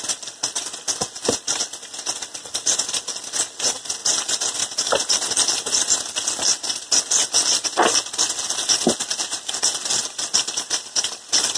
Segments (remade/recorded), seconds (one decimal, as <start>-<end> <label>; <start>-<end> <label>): 0.0-11.6 recorded

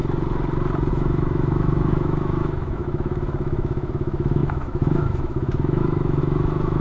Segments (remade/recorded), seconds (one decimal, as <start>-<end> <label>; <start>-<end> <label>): 0.0-0.9 recorded; 0.9-6.8 remade

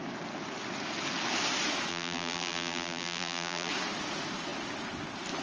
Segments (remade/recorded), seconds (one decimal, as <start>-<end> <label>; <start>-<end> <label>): 0.0-1.9 recorded; 1.9-3.7 remade; 3.7-5.4 recorded

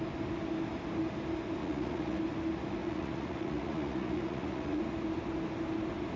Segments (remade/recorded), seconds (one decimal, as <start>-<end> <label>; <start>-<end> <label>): 0.0-1.6 recorded; 1.6-2.2 remade; 2.2-2.8 recorded; 2.8-4.8 remade; 4.8-6.2 recorded